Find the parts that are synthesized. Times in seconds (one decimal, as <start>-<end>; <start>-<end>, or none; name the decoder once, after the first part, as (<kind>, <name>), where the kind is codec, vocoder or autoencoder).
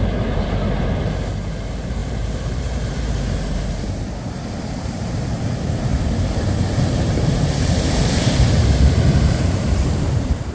0.0-5.9 (vocoder, BigVGAN v2); 6.8-10.5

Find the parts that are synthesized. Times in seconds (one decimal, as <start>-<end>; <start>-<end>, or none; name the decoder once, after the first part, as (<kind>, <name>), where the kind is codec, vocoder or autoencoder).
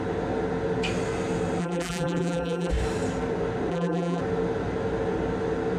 1.6-2.7 (vocoder, BigVGAN v2); 3.7-4.2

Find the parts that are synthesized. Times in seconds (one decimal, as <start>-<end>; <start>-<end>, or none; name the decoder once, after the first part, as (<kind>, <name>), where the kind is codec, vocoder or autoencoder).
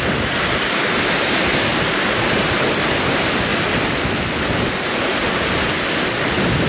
1.7-2.6 (vocoder, BigVGAN v2)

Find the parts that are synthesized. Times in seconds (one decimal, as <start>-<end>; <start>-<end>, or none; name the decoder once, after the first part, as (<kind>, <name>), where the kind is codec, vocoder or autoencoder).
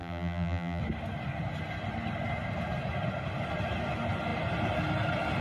0.0-0.8 (vocoder, BigVGAN v2)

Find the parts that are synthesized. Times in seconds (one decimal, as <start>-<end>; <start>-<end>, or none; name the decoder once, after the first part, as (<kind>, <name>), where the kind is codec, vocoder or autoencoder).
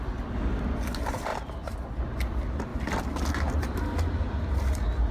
2.7-3.3 (vocoder, BigVGAN v2)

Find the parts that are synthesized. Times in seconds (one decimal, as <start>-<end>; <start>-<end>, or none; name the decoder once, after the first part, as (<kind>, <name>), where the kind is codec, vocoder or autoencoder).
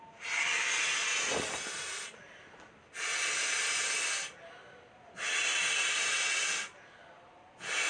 none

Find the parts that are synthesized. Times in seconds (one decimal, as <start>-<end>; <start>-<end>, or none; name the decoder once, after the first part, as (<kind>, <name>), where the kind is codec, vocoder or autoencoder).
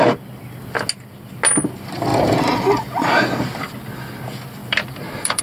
4.6-5.4 (vocoder, BigVGAN v2)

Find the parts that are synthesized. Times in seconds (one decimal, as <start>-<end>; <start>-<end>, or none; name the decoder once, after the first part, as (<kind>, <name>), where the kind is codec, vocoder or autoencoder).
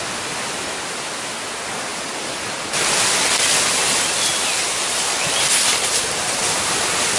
5.7-6.4 (vocoder, BigVGAN v2)